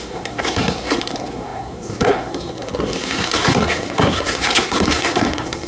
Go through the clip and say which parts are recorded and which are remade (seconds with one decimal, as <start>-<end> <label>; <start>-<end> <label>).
0.0-5.7 remade